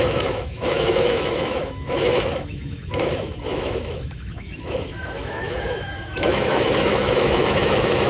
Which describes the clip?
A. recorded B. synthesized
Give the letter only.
B